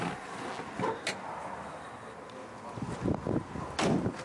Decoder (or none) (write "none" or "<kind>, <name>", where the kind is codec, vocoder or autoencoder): none